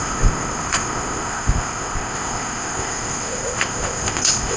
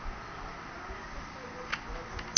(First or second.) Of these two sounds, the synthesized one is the first